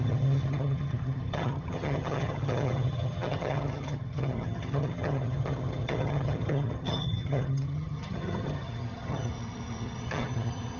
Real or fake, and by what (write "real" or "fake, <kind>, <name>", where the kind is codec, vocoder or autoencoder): fake, vocoder, HiFi-GAN